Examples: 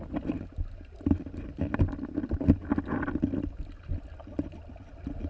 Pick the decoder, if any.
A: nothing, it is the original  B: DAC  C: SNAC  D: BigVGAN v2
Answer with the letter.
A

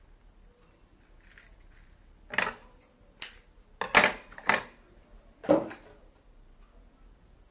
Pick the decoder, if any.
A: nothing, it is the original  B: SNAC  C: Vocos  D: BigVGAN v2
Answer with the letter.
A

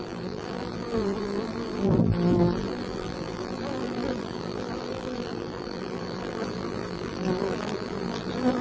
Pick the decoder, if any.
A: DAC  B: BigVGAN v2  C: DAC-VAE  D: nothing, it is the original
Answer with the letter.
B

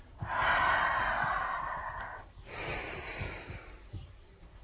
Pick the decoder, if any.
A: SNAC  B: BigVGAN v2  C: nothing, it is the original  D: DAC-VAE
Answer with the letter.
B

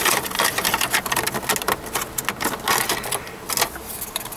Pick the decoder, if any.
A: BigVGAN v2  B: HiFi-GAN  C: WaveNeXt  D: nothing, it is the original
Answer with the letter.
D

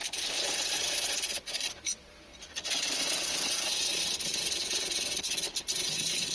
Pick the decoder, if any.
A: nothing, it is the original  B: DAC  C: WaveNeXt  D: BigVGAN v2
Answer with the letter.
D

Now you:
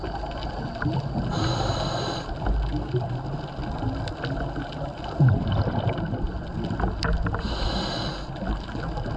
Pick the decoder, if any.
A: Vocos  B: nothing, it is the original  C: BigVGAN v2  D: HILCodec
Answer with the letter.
B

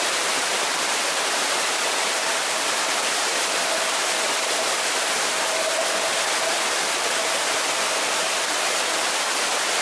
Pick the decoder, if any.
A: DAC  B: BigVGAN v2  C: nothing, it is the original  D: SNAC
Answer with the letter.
C